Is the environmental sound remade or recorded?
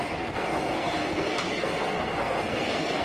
remade